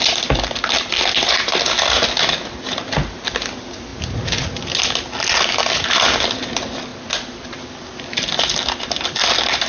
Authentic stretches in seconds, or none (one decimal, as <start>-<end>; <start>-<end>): 0.0-6.9; 7.5-9.7